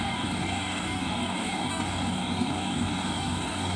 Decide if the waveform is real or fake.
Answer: fake